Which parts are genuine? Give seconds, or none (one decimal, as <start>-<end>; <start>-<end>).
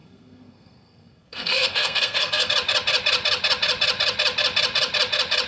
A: 2.5-5.5